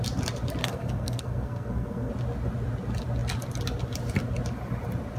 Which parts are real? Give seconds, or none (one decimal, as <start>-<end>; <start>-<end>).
0.0-0.6; 2.1-5.2